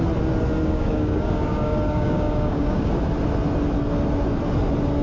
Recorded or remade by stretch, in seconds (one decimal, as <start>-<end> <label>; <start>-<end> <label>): 0.0-0.6 recorded; 0.6-2.9 remade; 2.9-5.0 recorded